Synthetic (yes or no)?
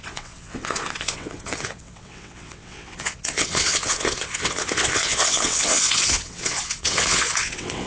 yes